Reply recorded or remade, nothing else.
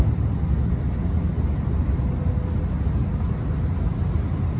recorded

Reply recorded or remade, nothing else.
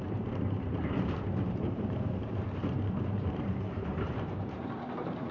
remade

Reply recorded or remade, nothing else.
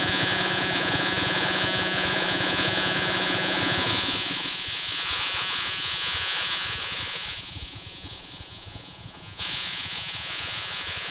remade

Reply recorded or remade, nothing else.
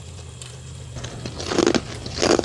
recorded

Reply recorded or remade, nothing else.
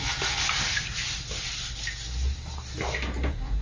recorded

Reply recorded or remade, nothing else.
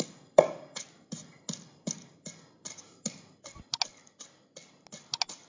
recorded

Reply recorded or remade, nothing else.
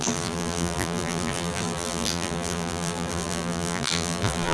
remade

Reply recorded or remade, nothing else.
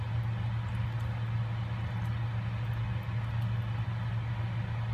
recorded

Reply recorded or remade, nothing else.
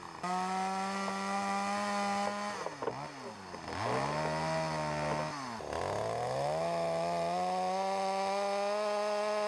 recorded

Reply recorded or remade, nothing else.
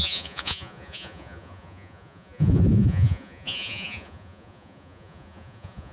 remade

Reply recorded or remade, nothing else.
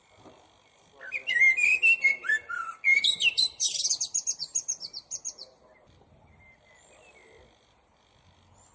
recorded